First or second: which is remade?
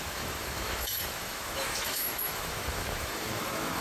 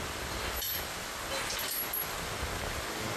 first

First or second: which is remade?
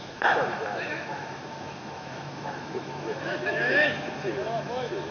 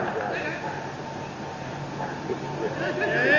first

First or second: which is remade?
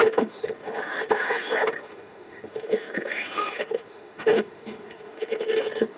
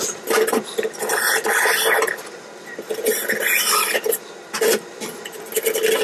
first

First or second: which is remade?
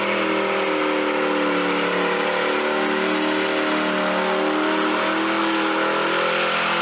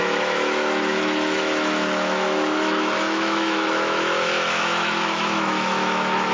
second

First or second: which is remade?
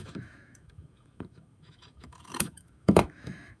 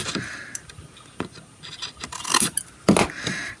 first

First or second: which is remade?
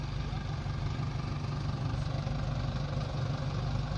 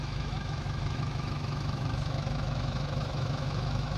second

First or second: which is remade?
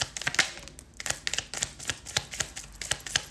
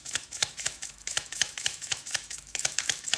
second